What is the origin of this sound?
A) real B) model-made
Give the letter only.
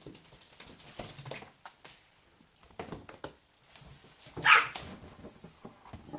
A